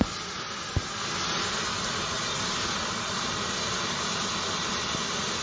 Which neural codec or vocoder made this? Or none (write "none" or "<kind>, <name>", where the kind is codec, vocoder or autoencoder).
none